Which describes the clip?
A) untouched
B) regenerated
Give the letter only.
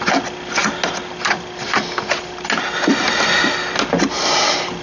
A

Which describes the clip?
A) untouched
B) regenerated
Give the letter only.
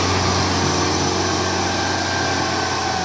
A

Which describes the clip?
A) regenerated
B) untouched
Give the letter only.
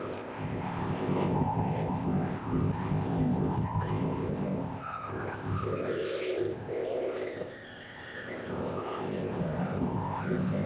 A